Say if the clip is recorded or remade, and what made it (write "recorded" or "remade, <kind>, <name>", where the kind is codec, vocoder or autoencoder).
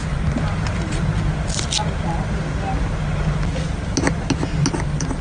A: recorded